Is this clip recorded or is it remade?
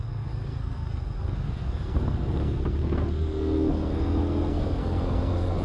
remade